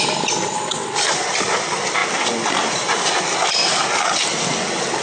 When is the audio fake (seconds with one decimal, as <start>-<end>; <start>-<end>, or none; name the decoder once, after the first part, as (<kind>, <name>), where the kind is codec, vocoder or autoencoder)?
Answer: none